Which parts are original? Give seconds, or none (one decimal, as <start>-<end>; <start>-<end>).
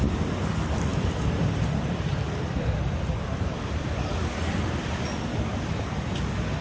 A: 0.0-0.9; 4.9-6.6